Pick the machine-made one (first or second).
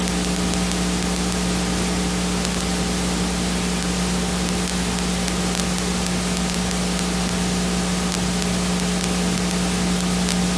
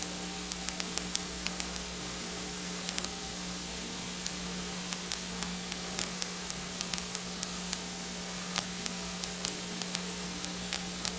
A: second